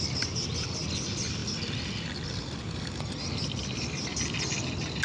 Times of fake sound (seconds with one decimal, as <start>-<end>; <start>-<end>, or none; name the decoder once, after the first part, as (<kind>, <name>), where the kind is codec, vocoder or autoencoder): none